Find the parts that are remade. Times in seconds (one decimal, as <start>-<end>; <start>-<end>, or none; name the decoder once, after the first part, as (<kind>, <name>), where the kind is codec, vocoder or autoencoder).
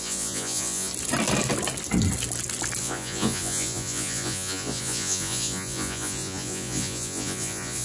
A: 0.0-0.9 (vocoder, Vocos); 2.8-7.8